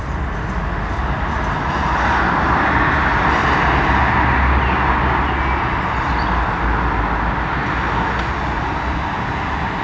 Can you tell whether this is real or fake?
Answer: real